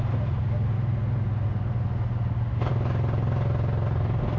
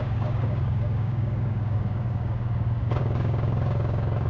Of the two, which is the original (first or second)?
first